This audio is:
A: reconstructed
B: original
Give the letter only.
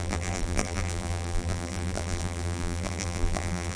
A